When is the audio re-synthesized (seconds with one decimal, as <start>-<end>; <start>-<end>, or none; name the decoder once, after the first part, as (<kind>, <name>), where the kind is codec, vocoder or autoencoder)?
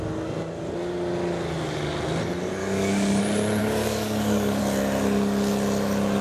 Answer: 2.6-3.2 (codec, DAC); 3.6-4.6